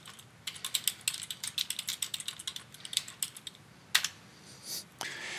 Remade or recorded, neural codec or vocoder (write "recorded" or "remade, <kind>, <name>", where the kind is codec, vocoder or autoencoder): recorded